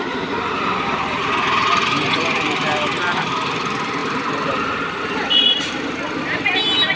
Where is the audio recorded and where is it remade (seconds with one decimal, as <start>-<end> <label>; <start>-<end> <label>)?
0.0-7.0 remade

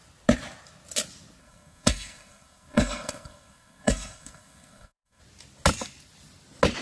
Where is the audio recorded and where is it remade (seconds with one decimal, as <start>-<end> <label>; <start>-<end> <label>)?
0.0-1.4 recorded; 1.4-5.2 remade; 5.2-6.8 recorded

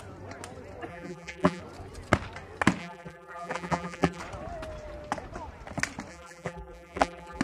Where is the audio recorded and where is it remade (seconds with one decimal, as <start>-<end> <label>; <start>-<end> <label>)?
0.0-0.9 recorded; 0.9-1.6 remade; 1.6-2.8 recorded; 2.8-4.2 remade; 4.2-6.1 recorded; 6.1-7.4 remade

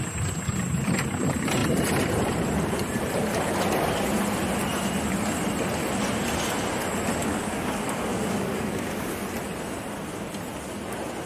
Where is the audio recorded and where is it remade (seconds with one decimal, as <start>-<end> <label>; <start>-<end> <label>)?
0.0-7.2 recorded; 7.2-9.1 remade; 9.1-11.3 recorded

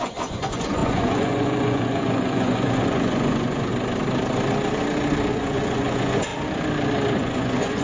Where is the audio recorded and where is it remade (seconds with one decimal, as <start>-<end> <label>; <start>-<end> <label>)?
0.0-3.7 remade; 3.7-5.3 recorded; 5.3-6.3 remade; 6.3-7.1 recorded; 7.1-7.8 remade